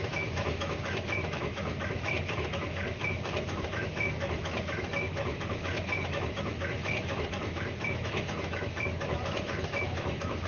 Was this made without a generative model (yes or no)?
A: no